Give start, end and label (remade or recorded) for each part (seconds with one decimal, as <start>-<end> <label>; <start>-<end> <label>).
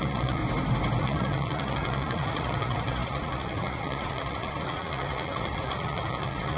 0.0-0.4 remade; 0.4-1.0 recorded; 1.0-6.6 remade